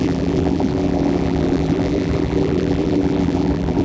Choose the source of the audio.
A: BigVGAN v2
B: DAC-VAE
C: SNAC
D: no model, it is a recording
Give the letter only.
A